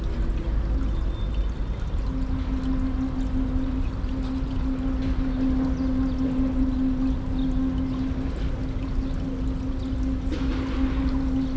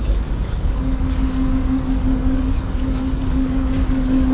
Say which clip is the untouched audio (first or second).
first